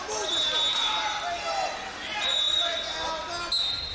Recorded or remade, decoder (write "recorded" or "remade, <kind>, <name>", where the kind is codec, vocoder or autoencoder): recorded